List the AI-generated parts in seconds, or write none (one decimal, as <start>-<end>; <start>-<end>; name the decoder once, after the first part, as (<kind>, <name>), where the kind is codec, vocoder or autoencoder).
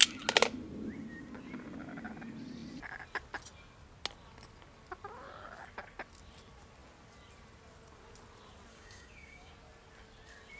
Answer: 8.7-9.5 (codec, DAC)